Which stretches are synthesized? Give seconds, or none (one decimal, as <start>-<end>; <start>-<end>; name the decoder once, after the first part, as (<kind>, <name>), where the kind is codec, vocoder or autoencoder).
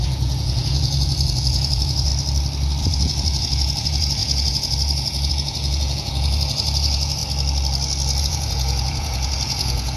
0.0-2.1 (vocoder, Vocos); 2.8-7.2; 8.2-10.0